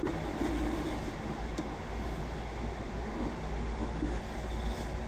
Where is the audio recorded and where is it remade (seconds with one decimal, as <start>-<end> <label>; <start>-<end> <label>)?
0.0-1.1 recorded; 1.1-4.2 remade; 4.2-5.1 recorded